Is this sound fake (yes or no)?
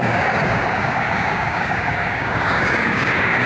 yes